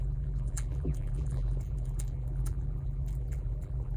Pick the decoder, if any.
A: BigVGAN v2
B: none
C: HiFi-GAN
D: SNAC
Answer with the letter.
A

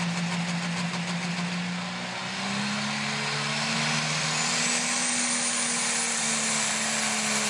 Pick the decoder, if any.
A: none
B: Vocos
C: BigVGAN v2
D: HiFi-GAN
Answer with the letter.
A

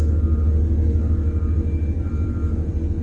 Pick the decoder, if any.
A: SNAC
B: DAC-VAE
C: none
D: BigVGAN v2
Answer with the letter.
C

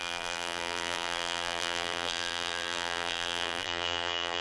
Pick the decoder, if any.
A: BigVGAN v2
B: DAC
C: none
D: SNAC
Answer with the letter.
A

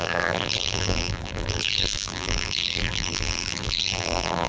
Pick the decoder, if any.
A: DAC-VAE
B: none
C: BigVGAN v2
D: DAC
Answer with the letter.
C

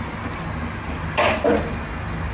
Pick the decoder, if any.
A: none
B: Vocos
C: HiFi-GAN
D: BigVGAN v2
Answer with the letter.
D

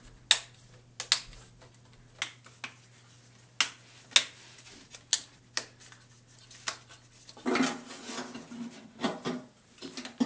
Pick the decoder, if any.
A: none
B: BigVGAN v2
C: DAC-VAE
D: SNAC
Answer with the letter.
A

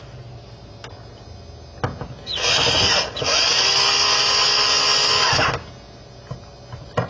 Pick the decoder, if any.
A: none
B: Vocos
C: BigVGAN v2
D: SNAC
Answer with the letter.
A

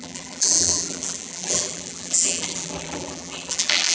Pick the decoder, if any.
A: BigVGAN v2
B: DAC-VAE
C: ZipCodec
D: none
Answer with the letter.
A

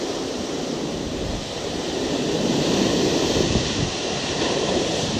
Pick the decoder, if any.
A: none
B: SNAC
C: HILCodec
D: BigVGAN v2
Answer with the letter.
D